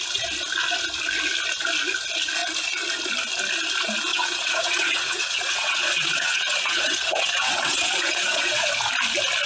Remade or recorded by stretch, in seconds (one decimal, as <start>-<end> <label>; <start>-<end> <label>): 0.0-4.1 recorded; 4.1-8.7 remade; 8.7-9.5 recorded